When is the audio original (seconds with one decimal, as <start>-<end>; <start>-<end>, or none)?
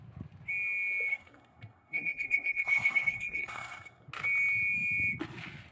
0.0-1.1; 4.1-5.7